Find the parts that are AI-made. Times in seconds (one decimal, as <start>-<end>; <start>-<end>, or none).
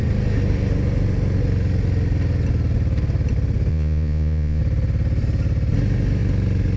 3.7-4.6